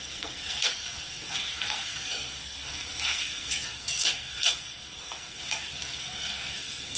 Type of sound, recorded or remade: remade